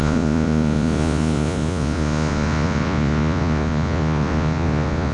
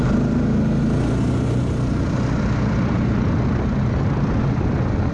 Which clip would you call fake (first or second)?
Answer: first